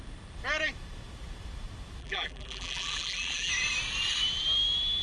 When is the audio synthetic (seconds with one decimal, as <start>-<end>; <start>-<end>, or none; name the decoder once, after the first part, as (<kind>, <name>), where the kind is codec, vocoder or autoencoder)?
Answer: 2.0-3.5 (vocoder, BigVGAN v2)